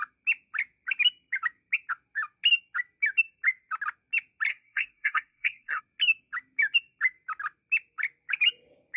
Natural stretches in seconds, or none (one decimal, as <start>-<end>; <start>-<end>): 0.0-4.5; 5.8-9.0